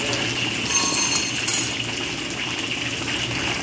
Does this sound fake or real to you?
real